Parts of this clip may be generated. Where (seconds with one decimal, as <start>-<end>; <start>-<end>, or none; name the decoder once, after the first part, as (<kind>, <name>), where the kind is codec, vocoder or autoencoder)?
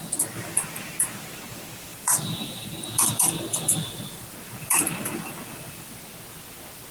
1.9-6.0 (vocoder, BigVGAN v2)